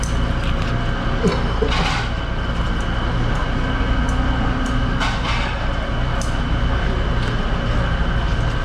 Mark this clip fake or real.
real